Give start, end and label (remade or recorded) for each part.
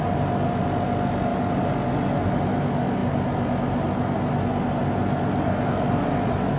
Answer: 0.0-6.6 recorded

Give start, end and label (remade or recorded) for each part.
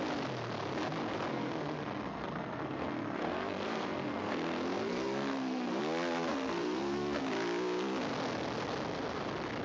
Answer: 0.0-1.3 recorded; 1.3-5.8 remade; 5.8-6.3 recorded; 6.3-7.2 remade; 7.2-9.6 recorded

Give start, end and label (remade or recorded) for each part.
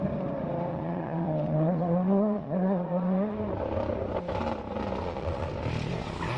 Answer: 0.0-0.7 recorded; 0.7-3.3 remade; 3.3-5.0 recorded; 5.0-5.5 remade; 5.5-6.4 recorded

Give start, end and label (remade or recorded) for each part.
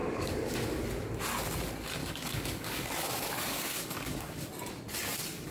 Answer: 0.0-0.8 remade; 0.8-2.0 recorded; 2.0-4.5 remade; 4.5-5.5 recorded